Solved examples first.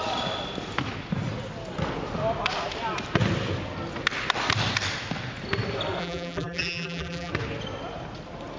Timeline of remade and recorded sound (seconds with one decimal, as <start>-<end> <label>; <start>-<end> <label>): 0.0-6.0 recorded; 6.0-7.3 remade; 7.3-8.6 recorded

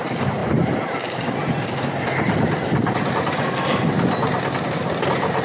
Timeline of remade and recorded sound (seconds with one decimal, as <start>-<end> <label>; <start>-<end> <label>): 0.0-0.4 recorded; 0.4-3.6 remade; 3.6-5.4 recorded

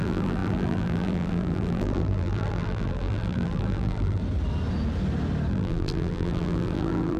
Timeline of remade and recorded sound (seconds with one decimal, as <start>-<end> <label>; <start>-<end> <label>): 0.0-4.2 remade; 4.2-5.5 recorded; 5.5-7.2 remade

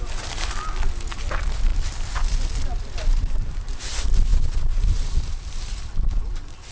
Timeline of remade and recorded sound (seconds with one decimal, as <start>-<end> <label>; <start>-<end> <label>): 0.0-3.1 recorded; 3.1-3.7 remade; 3.7-4.3 recorded; 4.3-5.8 remade; 5.8-6.7 recorded

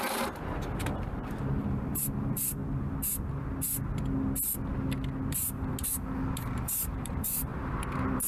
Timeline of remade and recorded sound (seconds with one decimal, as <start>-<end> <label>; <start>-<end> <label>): 0.0-2.6 remade; 2.6-5.3 recorded; 5.3-5.7 remade; 5.7-6.6 recorded; 6.6-8.3 remade

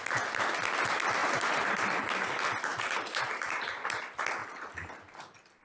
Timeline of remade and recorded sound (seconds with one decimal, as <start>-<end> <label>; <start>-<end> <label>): 0.0-1.2 recorded; 1.2-2.0 remade; 2.0-2.7 recorded; 2.7-4.0 remade; 4.0-4.4 recorded; 4.4-5.6 remade

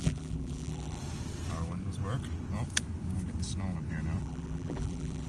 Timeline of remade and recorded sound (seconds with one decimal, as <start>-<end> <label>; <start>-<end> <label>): 0.0-1.0 remade; 1.0-4.2 recorded; 4.2-5.3 remade